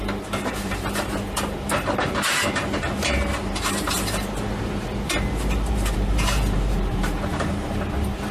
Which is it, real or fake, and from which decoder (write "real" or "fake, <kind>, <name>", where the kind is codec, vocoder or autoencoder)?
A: fake, vocoder, BigVGAN v2